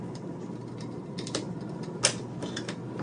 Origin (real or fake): real